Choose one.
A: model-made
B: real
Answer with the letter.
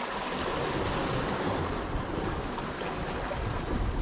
B